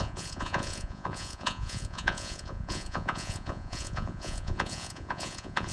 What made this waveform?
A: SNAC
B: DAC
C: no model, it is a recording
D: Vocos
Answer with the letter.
D